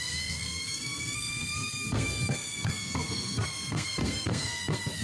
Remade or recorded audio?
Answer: remade